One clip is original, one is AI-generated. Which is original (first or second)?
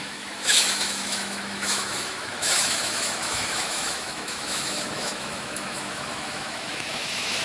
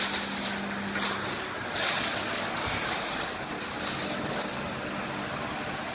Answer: second